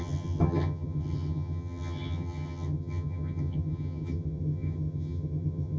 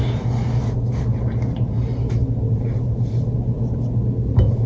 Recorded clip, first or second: second